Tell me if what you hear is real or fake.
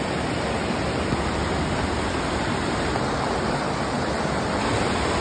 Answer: real